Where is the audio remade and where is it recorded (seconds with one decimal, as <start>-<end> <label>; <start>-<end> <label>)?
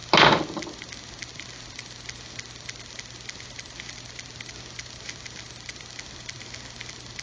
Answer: 0.0-7.2 recorded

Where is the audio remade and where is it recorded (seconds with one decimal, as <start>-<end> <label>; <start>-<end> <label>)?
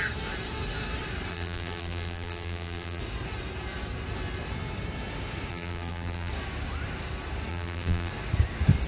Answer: 0.0-1.3 recorded; 1.3-3.0 remade; 3.0-5.5 recorded; 5.5-6.3 remade; 6.3-7.5 recorded; 7.5-8.1 remade; 8.1-8.9 recorded